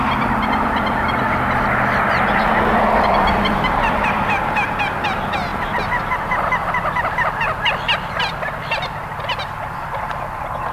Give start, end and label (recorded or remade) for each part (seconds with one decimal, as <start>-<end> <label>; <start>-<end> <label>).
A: 0.0-10.7 recorded